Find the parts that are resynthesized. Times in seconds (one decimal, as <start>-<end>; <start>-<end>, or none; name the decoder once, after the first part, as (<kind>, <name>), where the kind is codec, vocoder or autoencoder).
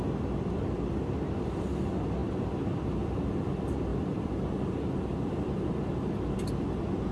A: 2.2-3.2 (vocoder, BigVGAN v2); 3.9-5.6